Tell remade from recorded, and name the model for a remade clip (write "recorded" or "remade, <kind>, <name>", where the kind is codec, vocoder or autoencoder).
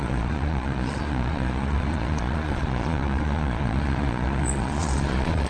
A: remade, vocoder, Vocos